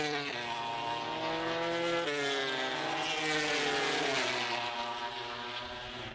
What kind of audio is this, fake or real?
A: real